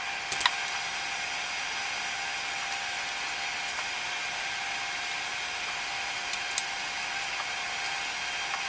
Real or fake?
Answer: real